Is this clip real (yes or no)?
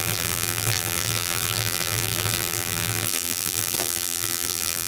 no